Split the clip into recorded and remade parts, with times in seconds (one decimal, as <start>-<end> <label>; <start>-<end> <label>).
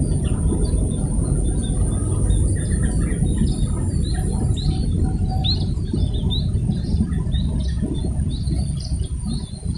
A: 0.0-9.8 recorded